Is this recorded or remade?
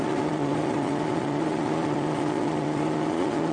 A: remade